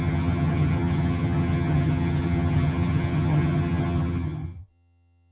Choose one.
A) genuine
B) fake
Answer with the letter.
B